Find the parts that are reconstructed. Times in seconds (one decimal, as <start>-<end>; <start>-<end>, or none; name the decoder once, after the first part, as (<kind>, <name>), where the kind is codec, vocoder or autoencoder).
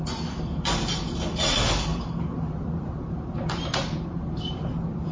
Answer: 1.9-5.1 (vocoder, BigVGAN v2)